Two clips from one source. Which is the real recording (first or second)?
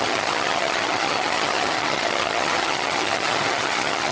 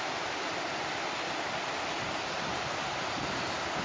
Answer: second